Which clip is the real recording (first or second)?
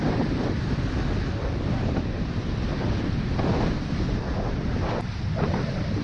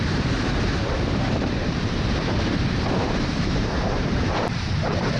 first